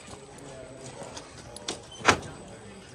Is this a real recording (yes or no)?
yes